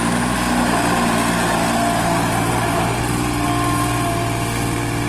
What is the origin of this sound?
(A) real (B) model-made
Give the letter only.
A